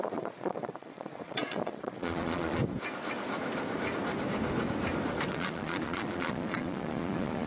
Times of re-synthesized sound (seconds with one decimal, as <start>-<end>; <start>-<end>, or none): 0.0-2.6; 5.3-7.5